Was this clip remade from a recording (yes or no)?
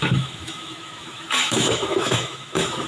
yes